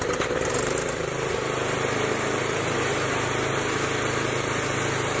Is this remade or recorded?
remade